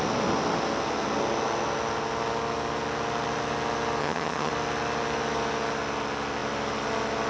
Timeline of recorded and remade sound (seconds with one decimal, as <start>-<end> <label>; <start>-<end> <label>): 0.0-4.0 recorded; 4.0-4.5 remade; 4.5-7.3 recorded